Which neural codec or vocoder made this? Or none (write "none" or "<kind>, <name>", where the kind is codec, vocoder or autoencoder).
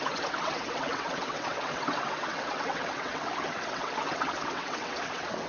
vocoder, WaveNeXt